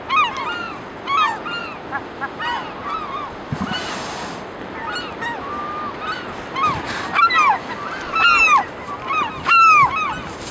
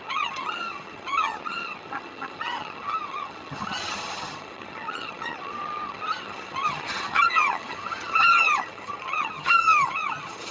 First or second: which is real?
first